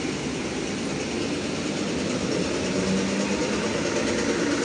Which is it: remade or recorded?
recorded